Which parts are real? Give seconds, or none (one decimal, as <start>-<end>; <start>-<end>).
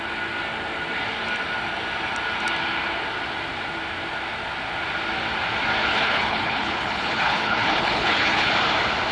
0.0-5.9; 8.5-9.1